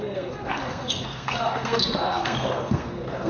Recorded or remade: remade